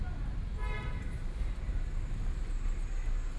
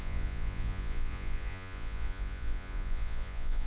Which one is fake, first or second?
second